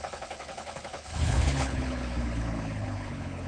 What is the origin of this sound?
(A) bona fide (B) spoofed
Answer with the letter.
B